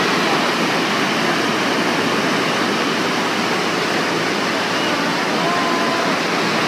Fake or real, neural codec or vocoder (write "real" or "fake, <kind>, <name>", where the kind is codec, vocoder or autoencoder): real